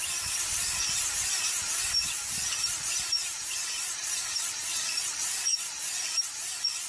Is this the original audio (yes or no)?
no